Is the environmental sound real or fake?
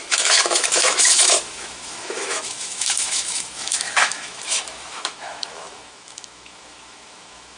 fake